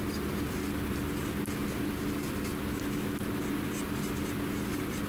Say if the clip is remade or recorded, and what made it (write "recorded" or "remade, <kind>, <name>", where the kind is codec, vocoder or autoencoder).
recorded